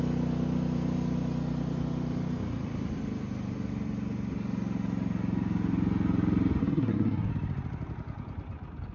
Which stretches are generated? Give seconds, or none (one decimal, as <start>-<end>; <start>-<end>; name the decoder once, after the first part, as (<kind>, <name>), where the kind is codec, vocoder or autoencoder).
6.6-7.3 (codec, SNAC)